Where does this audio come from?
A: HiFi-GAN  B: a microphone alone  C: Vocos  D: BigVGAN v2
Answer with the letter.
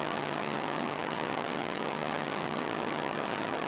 A